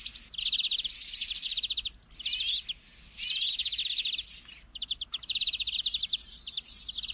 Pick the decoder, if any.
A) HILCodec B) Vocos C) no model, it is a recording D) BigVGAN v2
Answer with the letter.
C